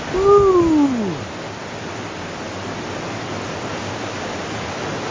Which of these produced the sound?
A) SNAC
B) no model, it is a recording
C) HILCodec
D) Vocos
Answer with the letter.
B